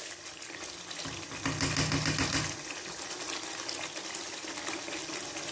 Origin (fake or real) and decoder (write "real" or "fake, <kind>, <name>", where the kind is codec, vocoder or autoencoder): real